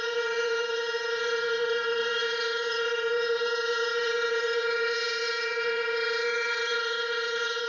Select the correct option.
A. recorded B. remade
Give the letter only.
B